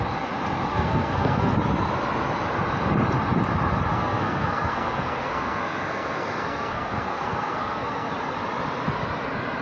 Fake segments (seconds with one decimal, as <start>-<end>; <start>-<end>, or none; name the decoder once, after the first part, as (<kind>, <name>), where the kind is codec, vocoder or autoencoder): 0.7-1.5 (codec, SNAC); 3.9-8.1